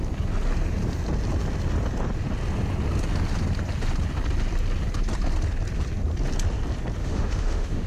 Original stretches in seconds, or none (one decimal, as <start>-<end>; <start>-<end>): 0.0-7.0